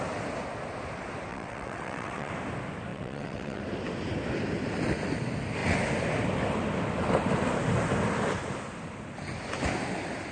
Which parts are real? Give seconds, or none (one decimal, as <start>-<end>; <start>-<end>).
0.0-1.3; 2.3-2.9; 3.6-10.3